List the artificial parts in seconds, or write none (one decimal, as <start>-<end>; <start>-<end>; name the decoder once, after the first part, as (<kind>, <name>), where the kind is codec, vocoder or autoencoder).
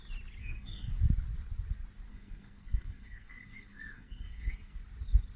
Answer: 0.4-1.0 (codec, SNAC); 2.1-4.8